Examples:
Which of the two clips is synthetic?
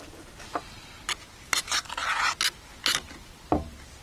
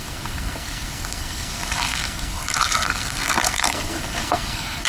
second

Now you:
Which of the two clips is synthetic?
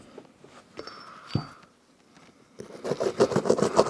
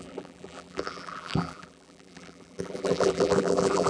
second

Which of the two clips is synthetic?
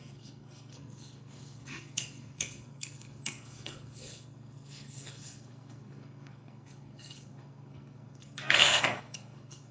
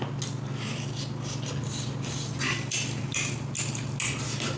first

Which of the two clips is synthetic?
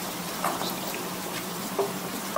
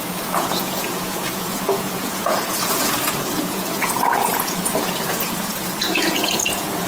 second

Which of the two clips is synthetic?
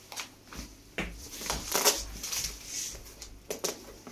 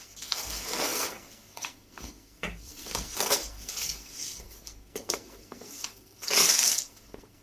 second